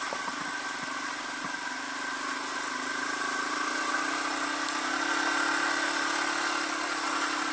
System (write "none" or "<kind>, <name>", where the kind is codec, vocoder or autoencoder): none